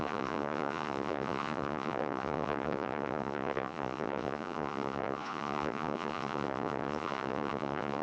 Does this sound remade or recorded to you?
remade